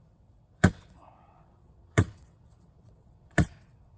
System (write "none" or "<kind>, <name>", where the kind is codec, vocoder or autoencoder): vocoder, WaveNeXt